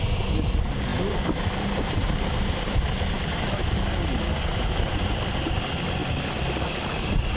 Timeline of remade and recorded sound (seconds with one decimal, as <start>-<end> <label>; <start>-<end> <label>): 0.0-7.4 recorded